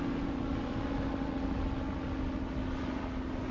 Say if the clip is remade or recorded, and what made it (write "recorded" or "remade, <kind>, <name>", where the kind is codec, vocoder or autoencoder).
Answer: recorded